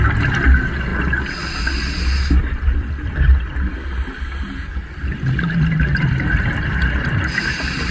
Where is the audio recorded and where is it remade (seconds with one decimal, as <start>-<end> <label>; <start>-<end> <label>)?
0.0-7.9 recorded